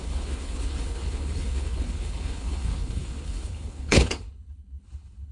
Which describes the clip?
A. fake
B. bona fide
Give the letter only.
A